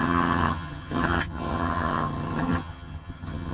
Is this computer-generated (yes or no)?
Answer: yes